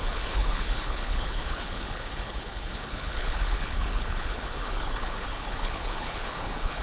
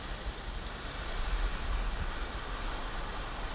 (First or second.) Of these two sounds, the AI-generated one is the first